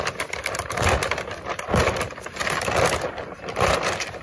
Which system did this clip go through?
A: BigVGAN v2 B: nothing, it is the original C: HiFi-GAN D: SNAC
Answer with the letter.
A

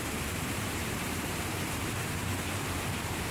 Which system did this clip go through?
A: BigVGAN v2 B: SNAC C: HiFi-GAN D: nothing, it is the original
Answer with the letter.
A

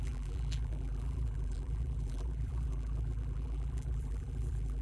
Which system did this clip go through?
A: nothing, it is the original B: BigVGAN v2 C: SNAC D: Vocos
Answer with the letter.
B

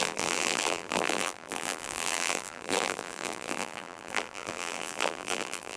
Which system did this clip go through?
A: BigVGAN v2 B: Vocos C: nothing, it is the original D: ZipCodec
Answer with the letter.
A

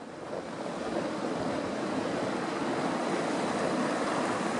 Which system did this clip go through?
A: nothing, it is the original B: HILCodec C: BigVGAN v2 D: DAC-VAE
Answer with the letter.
A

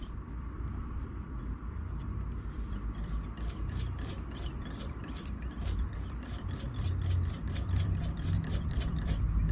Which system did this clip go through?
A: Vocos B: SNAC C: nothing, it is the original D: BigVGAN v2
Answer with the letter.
D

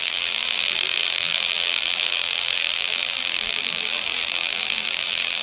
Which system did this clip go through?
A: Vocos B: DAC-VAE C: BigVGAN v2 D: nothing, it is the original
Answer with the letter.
C